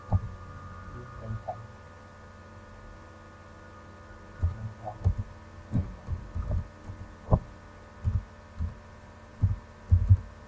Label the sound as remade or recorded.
recorded